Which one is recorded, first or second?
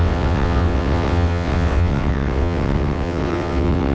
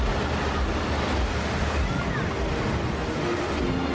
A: second